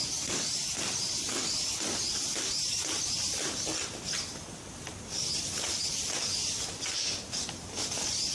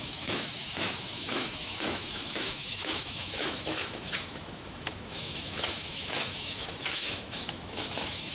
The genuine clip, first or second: first